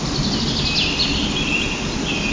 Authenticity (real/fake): real